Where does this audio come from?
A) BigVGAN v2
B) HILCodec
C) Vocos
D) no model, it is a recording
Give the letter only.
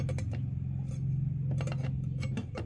D